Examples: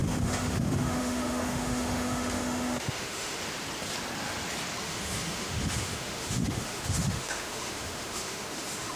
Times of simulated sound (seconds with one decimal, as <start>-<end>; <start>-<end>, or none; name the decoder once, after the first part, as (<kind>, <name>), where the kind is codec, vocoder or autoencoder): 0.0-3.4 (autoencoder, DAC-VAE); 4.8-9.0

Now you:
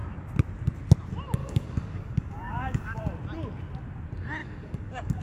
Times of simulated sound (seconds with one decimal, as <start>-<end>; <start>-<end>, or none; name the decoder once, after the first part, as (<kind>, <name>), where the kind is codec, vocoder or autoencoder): 1.4-3.0 (codec, DAC); 4.4-5.2

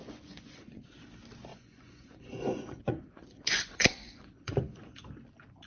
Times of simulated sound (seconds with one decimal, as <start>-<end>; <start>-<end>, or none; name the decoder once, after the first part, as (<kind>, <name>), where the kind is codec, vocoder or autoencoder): 0.0-0.8 (vocoder, Vocos); 1.5-4.9

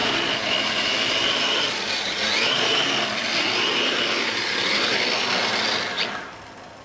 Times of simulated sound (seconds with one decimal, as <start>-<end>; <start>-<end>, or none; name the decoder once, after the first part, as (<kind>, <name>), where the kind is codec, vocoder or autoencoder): none